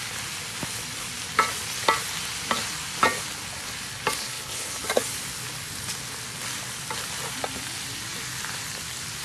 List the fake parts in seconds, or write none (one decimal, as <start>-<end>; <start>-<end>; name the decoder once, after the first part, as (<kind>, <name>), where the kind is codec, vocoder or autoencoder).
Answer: 4.2-4.8 (codec, HILCodec)